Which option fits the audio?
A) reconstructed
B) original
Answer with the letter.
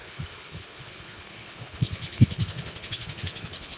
A